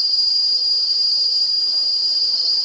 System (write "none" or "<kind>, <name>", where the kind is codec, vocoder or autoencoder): vocoder, HiFi-GAN